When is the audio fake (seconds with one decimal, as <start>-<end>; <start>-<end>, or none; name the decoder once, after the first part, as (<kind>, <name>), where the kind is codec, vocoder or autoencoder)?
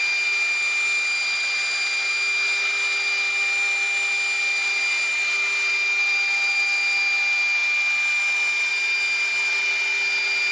none